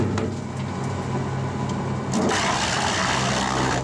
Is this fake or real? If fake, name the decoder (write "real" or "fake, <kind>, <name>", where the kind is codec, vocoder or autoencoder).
real